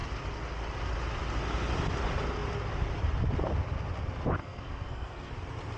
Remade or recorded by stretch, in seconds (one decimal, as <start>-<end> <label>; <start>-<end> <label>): 0.0-4.4 recorded; 4.4-5.3 remade; 5.3-5.8 recorded